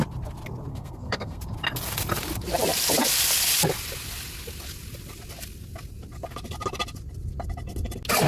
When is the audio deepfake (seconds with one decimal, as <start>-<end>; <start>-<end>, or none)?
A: 0.7-1.4